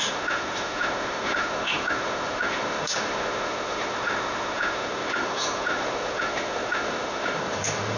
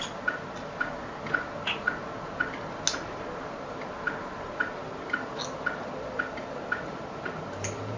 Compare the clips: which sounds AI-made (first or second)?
first